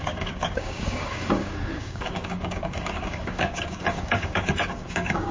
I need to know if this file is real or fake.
fake